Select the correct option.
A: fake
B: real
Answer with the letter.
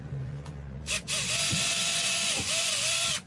A